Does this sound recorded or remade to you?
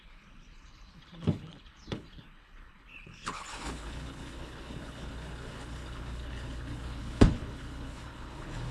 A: remade